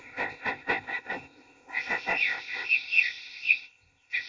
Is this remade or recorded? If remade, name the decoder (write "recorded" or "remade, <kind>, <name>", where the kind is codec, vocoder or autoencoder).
remade, codec, ZipCodec